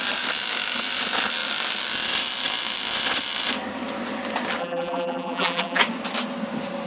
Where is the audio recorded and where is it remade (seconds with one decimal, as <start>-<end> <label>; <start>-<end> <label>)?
0.0-4.6 recorded; 4.6-5.8 remade; 5.8-6.9 recorded